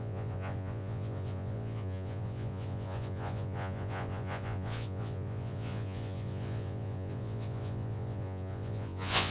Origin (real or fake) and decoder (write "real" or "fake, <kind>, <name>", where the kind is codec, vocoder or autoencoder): fake, vocoder, Vocos